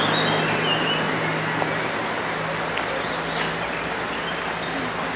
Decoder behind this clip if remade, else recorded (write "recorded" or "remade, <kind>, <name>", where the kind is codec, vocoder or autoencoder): recorded